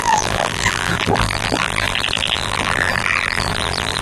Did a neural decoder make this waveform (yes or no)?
yes